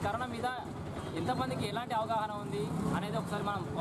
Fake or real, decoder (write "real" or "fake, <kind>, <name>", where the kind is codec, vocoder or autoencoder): real